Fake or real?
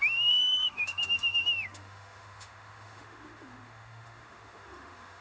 fake